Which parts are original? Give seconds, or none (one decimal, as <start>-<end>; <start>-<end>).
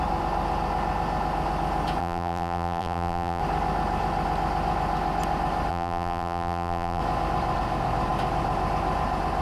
0.0-2.0; 3.4-5.7; 7.0-9.4